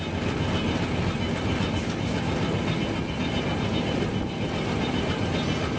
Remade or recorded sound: recorded